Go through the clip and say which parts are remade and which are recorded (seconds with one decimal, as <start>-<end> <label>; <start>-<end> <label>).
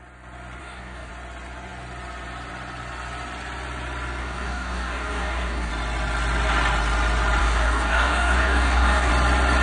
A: 0.0-0.6 recorded; 0.6-1.1 remade; 1.1-4.2 recorded; 4.2-5.7 remade; 5.7-7.4 recorded; 7.4-9.1 remade; 9.1-9.6 recorded